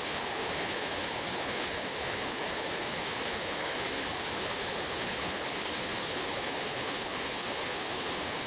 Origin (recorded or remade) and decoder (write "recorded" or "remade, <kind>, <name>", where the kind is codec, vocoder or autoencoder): remade, codec, HILCodec